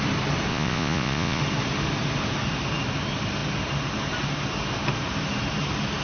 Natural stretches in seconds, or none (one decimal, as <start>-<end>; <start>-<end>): 0.0-0.5; 1.4-6.0